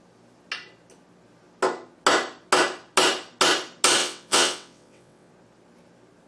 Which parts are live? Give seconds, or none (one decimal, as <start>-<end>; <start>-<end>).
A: 0.0-4.0; 5.3-6.3